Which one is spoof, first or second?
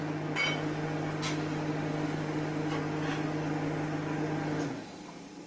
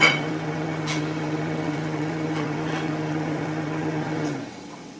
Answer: second